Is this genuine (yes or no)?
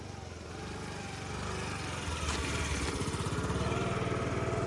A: yes